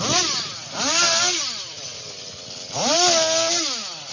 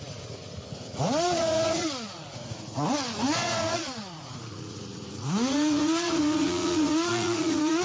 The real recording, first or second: first